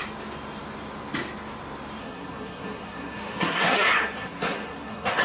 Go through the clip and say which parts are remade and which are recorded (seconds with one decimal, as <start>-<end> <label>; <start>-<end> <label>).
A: 0.0-2.0 recorded; 2.0-5.2 remade